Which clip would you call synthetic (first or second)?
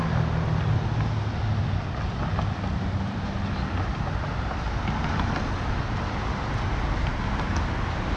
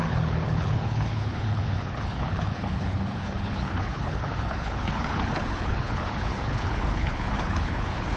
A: second